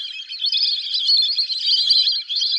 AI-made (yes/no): no